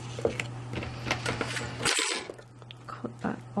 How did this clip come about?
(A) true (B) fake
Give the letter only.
A